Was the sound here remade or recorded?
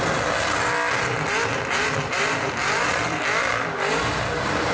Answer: recorded